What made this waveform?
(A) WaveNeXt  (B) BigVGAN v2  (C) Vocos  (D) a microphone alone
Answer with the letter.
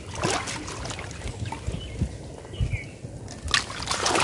D